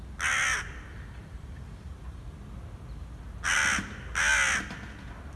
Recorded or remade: recorded